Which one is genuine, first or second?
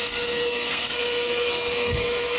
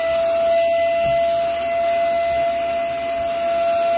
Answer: second